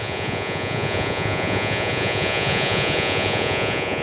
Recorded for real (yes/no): no